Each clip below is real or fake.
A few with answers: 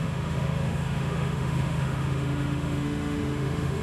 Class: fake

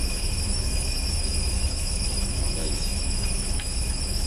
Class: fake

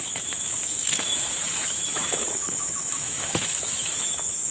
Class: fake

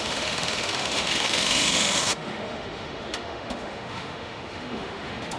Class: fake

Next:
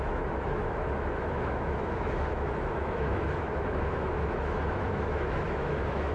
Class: fake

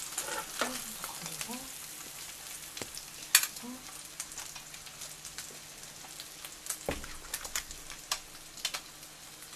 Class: real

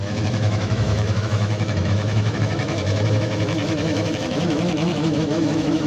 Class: fake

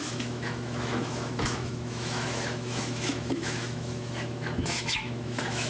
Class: fake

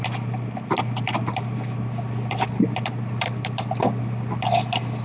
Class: real